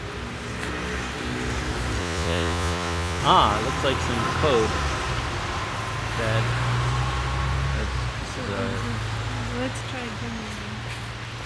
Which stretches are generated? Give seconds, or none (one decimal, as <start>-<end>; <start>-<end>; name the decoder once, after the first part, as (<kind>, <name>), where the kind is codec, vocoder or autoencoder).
2.0-3.2 (vocoder, Vocos)